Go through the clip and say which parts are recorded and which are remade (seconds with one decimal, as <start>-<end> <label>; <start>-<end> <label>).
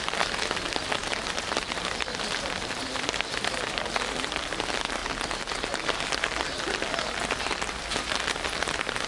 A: 0.0-1.0 recorded; 1.0-4.4 remade; 4.4-9.1 recorded